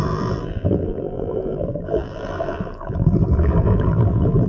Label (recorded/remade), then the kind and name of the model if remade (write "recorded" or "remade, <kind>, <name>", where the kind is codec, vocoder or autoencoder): remade, vocoder, BigVGAN v2